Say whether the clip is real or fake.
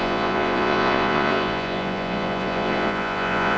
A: fake